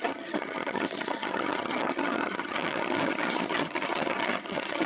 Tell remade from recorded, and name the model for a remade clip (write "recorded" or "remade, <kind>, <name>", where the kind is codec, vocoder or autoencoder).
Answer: remade, vocoder, HiFi-GAN